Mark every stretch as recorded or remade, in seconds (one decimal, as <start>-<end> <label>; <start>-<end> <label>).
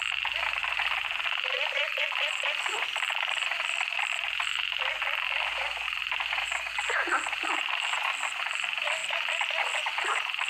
0.0-10.5 recorded